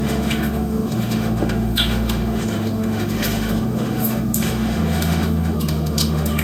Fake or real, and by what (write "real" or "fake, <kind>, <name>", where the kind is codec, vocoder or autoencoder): fake, autoencoder, DAC-VAE